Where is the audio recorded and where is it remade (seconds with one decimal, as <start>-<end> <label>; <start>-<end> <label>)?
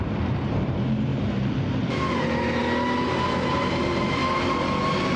0.0-1.1 remade; 1.1-2.1 recorded; 2.1-2.6 remade; 2.6-3.5 recorded; 3.5-4.2 remade; 4.2-5.2 recorded